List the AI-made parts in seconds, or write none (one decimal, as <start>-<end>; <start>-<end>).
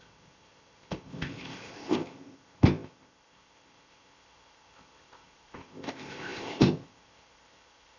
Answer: 0.0-8.0